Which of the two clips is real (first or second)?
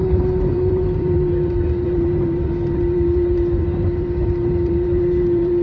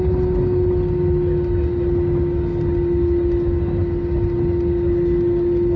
second